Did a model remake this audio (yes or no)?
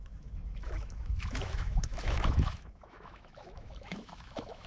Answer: yes